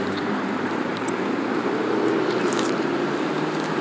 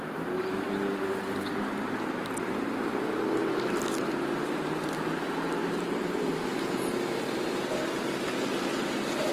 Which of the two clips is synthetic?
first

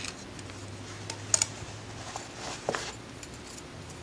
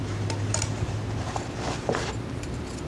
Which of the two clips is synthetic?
second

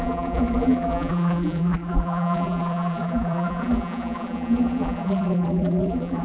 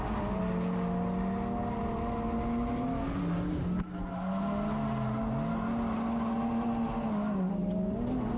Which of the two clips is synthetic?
first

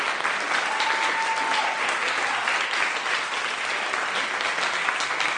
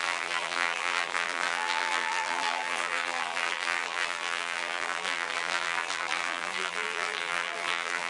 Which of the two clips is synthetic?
second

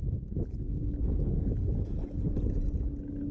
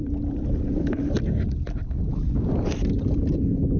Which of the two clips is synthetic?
second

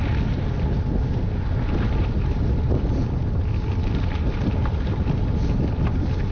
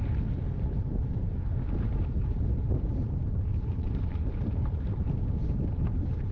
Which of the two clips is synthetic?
second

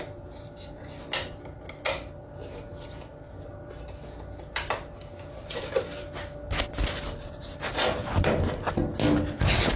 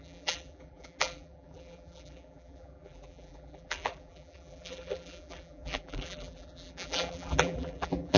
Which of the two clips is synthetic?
second